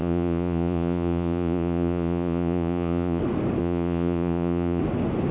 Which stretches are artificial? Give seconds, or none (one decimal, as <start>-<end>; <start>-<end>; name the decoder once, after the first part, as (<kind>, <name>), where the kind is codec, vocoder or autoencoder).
0.0-3.2 (vocoder, Vocos); 3.6-4.8